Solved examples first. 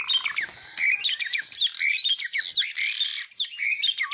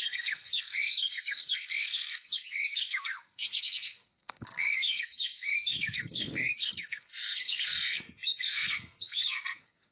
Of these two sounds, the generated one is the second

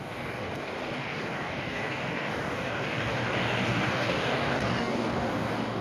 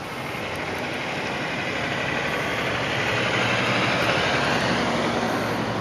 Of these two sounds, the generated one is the first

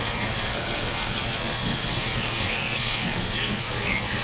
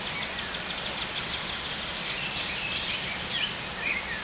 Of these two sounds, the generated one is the first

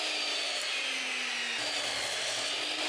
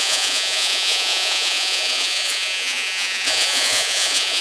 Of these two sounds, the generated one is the second